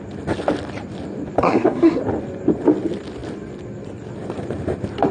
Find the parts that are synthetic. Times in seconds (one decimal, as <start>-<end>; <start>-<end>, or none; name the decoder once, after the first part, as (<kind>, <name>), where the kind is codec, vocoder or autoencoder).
1.4-2.0 (codec, SNAC)